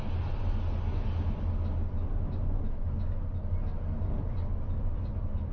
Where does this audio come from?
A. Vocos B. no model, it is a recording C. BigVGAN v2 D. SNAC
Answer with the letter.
B